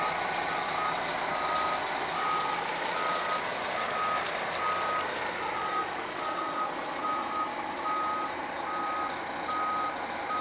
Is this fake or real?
real